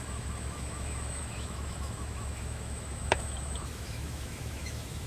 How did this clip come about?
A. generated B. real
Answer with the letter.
A